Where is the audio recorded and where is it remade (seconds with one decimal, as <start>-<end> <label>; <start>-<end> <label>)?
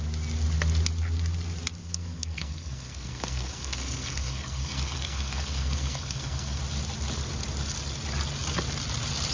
0.0-1.8 recorded; 1.8-6.6 remade; 6.6-9.3 recorded